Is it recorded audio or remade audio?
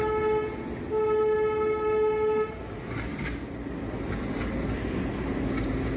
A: recorded